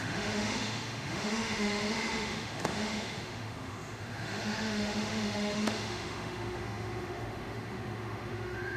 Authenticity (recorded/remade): remade